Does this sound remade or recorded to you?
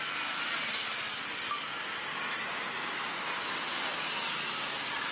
recorded